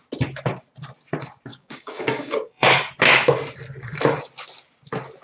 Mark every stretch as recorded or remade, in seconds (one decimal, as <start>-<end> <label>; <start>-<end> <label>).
0.0-1.5 recorded; 1.5-2.9 remade; 2.9-5.2 recorded